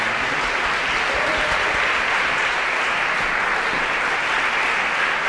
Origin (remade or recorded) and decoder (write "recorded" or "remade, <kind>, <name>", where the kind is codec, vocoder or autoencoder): recorded